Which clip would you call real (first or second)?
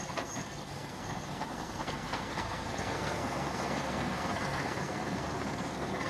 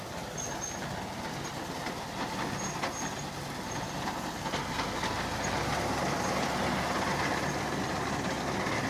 second